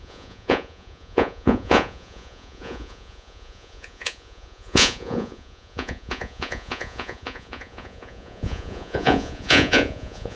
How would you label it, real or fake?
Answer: fake